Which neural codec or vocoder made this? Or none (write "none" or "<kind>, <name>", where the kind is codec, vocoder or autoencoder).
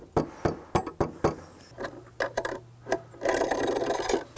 none